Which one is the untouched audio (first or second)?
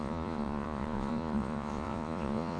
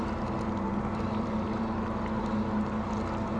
second